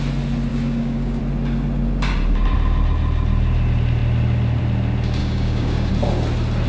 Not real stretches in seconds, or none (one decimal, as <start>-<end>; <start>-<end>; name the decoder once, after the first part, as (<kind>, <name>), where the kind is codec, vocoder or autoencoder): 0.5-1.2 (codec, DAC); 5.2-5.9